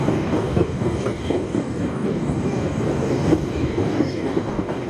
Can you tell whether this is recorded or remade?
remade